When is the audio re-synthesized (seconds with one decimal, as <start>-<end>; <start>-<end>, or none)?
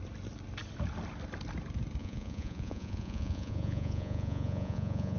2.0-5.2